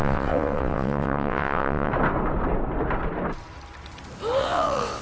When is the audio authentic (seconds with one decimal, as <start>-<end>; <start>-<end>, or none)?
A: 1.9-4.4